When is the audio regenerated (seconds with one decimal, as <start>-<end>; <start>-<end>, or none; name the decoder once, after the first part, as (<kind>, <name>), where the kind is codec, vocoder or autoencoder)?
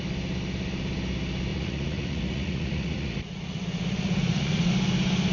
1.5-4.7 (vocoder, Vocos)